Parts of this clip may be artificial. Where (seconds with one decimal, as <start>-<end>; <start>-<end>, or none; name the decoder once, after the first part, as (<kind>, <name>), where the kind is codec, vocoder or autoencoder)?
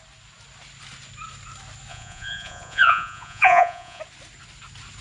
1.9-4.0 (vocoder, Vocos)